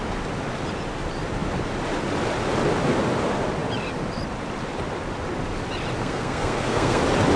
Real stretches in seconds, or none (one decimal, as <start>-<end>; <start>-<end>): 0.0-6.0; 7.0-7.4